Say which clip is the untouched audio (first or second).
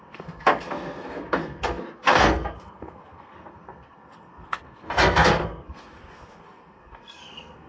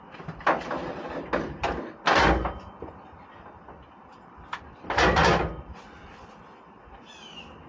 second